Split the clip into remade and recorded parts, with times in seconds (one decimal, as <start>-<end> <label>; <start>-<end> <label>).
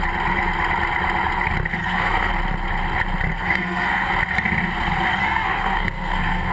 0.0-1.8 recorded; 1.8-2.3 remade; 2.3-3.3 recorded; 3.3-4.1 remade; 4.1-5.1 recorded; 5.1-6.5 remade